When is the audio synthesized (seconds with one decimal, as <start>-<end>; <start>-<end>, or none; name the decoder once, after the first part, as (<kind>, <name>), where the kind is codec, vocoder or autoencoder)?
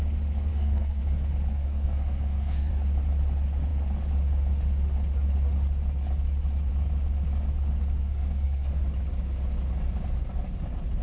0.5-1.0 (codec, SNAC); 1.5-2.7; 8.0-8.8